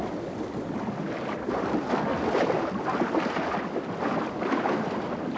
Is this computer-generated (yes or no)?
no